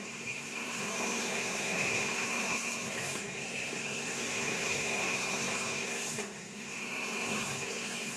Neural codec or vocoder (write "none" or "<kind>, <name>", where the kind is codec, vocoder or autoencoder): codec, SNAC